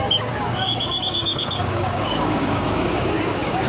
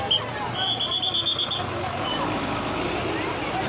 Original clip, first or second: second